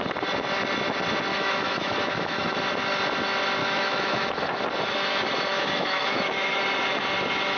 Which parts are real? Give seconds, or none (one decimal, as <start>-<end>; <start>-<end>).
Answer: 0.0-1.3; 2.6-3.6; 4.6-5.5; 6.6-7.6